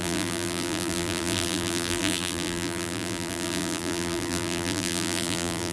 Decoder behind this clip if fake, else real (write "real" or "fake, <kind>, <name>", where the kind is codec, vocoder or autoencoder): fake, vocoder, BigVGAN v2